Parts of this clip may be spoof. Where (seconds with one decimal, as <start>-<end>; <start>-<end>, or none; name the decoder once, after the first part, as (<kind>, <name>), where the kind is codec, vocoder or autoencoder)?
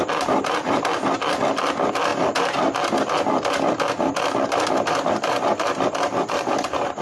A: none